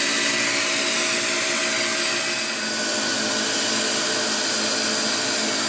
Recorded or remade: recorded